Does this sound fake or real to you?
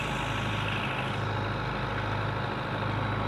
real